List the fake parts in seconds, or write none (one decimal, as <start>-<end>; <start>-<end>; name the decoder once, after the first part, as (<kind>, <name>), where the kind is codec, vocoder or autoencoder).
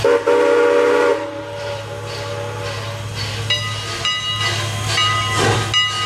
none